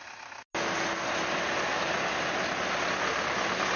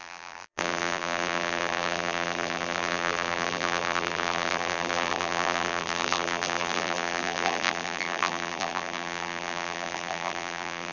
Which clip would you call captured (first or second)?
first